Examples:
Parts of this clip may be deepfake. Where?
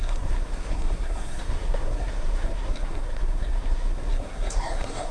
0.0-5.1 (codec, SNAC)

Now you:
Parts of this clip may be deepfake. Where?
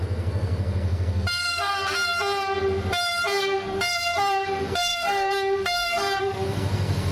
0.0-1.7 (codec, SNAC); 3.4-7.1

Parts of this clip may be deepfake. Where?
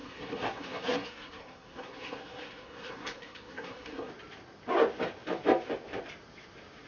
0.0-4.1 (codec, SNAC)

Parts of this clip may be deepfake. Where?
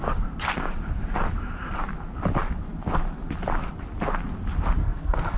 4.8-5.4 (codec, SNAC)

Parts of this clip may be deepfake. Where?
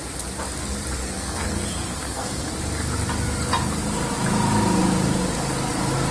1.0-2.5 (codec, SNAC)